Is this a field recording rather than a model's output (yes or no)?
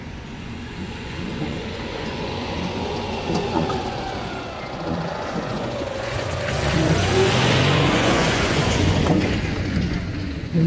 no